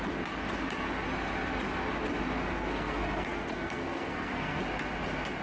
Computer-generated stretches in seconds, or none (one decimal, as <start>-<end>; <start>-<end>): 2.4-4.6